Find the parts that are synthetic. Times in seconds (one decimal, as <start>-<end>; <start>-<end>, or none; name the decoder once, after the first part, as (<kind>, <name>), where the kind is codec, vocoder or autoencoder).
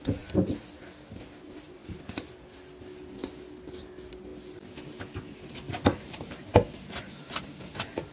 none